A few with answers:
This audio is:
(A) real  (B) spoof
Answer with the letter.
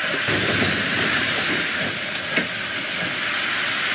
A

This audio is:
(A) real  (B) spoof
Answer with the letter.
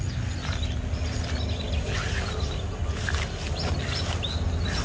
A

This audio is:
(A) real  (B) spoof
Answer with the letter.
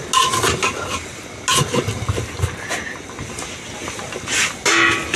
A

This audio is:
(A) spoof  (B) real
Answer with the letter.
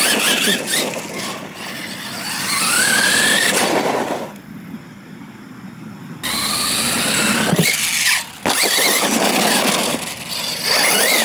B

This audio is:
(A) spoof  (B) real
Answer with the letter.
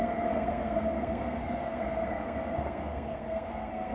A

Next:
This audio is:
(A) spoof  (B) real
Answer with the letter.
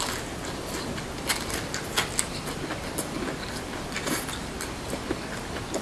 B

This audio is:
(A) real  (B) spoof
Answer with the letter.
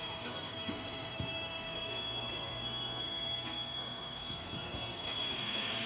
B